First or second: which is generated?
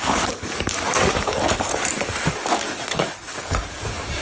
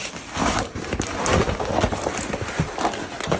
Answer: first